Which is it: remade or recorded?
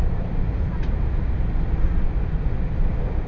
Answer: recorded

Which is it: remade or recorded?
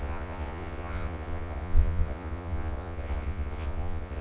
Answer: remade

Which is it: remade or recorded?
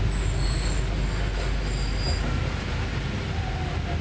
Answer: recorded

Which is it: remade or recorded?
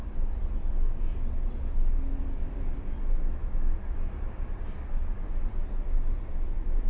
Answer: recorded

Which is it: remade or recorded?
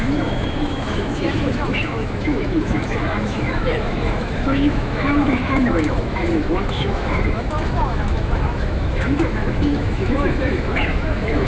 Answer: remade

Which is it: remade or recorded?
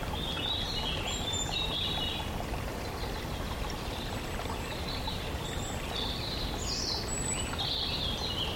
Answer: recorded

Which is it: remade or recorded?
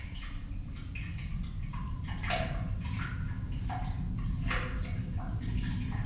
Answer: recorded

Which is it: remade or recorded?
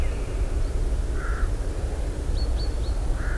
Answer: recorded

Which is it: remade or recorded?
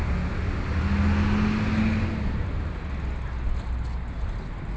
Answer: recorded